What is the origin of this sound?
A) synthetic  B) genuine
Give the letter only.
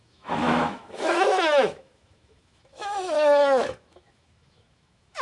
A